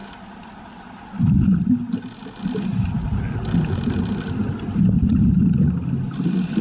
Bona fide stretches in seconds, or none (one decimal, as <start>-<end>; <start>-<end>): 0.0-6.6